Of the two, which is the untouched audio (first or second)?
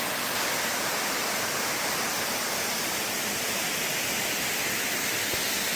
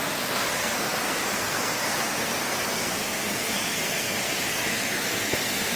first